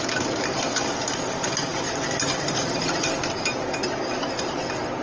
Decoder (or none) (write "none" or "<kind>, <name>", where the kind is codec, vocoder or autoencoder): none